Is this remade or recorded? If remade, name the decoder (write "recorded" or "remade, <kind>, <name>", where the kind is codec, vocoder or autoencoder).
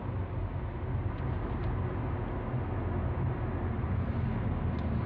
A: recorded